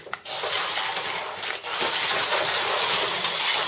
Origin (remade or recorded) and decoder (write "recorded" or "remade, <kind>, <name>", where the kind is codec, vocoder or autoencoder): recorded